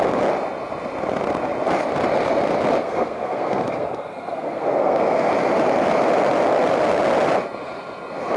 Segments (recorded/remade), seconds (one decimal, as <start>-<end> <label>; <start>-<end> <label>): 0.0-2.8 recorded; 2.8-5.3 remade; 5.3-8.4 recorded